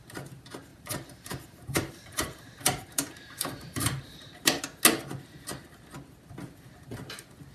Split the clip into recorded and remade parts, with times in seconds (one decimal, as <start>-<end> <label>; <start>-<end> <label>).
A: 0.0-0.7 recorded; 0.7-4.6 remade; 4.6-7.5 recorded